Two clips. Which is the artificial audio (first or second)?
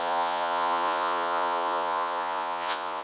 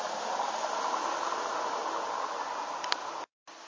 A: first